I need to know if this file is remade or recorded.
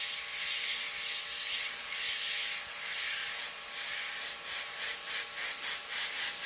recorded